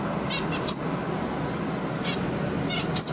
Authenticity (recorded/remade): recorded